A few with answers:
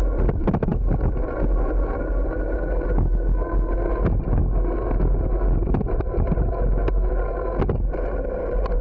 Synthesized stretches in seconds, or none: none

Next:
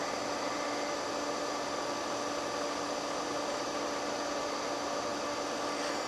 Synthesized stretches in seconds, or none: none

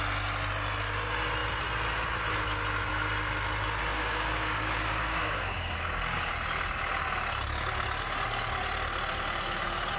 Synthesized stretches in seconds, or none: 3.9-6.3 (codec, DAC)

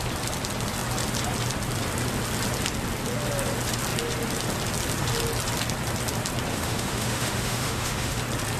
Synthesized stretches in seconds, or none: 6.5-8.2 (autoencoder, DAC-VAE)